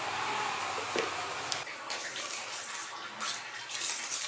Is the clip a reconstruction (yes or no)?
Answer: no